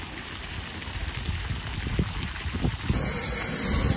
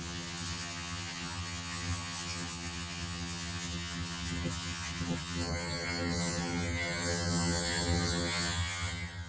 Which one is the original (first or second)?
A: first